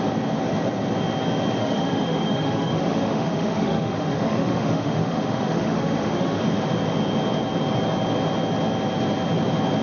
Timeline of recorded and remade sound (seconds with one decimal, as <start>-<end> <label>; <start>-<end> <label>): 0.0-1.6 recorded; 1.6-6.4 remade; 6.4-9.8 recorded